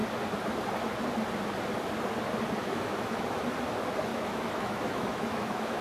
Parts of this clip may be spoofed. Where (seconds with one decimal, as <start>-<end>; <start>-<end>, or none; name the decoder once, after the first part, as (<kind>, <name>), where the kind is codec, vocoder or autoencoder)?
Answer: 2.6-3.4 (autoencoder, DAC-VAE); 4.1-5.8